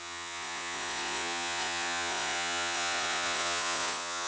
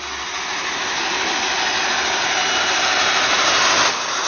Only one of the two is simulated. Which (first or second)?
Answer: first